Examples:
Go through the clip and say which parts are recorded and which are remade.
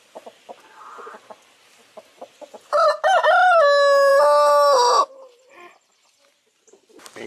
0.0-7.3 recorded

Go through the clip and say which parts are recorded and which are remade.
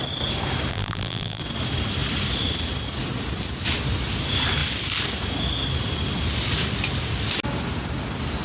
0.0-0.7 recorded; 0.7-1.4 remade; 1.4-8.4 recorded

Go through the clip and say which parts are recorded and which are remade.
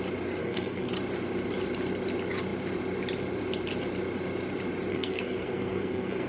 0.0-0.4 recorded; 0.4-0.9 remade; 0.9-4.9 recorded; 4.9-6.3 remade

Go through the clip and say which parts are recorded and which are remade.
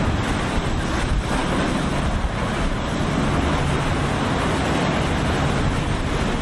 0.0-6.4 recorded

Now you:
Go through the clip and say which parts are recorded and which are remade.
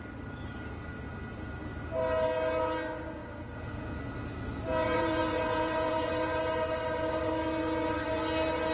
0.0-3.2 recorded; 3.2-4.0 remade; 4.0-4.7 recorded; 4.7-6.4 remade; 6.4-8.7 recorded